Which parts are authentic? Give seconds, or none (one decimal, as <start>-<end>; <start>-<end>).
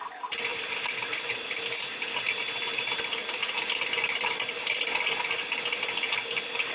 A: 0.0-6.7